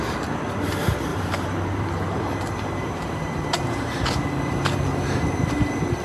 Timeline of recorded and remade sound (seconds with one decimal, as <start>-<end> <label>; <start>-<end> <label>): 0.0-1.1 recorded; 1.1-3.9 remade; 3.9-6.0 recorded